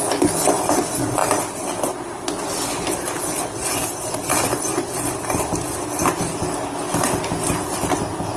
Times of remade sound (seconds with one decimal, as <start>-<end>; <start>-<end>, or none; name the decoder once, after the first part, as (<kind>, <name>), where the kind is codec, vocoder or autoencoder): 3.8-6.0 (vocoder, BigVGAN v2)